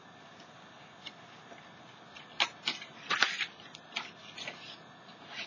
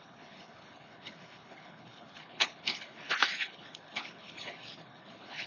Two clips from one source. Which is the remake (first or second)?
second